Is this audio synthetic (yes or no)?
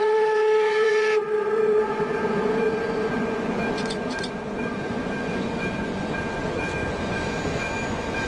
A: yes